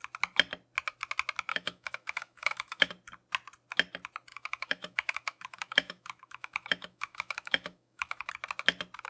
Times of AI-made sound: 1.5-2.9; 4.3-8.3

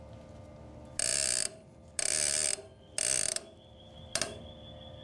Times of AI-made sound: none

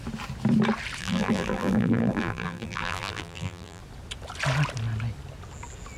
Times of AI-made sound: 1.0-3.8

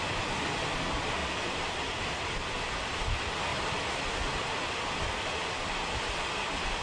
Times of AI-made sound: none

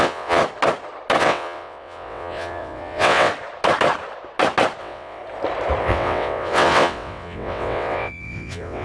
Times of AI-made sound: 0.0-0.4; 1.2-3.3; 4.8-5.2; 5.8-8.8

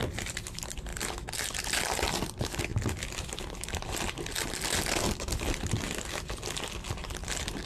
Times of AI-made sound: none

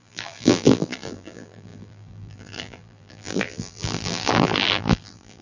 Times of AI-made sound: 0.0-5.4